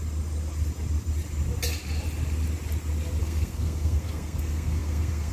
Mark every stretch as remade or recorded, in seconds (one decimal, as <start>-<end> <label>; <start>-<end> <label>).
0.0-3.2 recorded; 3.2-5.3 remade